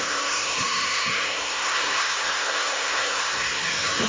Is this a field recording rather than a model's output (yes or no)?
no